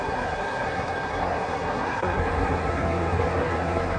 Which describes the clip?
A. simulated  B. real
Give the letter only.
A